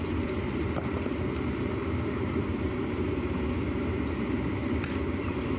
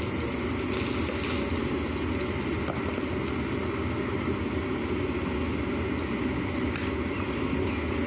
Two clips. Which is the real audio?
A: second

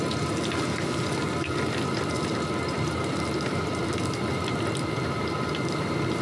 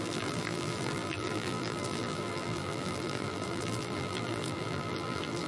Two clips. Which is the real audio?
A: first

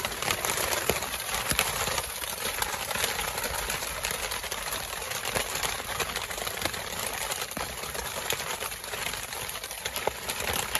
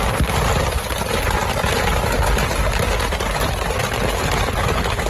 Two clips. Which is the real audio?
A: second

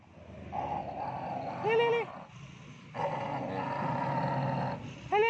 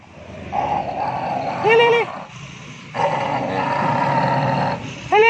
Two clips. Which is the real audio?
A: first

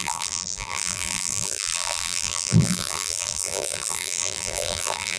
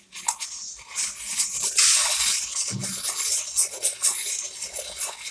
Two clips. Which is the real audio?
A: second